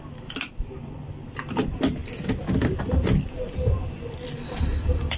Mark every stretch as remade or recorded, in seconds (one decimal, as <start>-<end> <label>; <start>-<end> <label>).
0.0-2.0 remade; 2.0-2.8 recorded; 2.8-5.2 remade